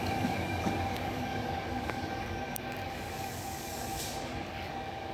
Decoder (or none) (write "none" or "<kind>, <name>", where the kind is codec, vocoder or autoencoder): codec, DAC